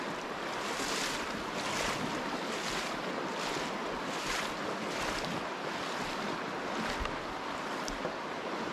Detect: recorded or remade recorded